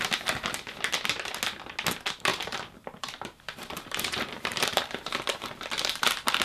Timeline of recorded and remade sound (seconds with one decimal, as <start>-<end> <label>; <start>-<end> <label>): 0.0-2.3 recorded; 2.3-6.4 remade